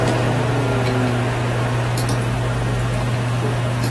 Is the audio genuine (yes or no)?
yes